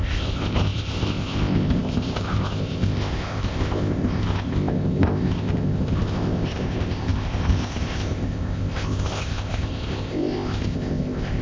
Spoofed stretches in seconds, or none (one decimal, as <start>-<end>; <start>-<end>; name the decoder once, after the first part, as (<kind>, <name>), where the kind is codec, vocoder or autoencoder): 0.0-11.4 (codec, ZipCodec)